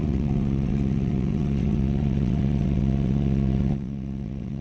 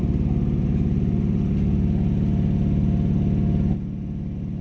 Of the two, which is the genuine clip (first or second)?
second